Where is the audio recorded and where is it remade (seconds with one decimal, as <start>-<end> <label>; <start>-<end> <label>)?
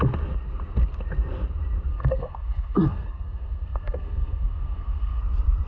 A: 0.0-1.9 recorded; 1.9-5.2 remade; 5.2-5.7 recorded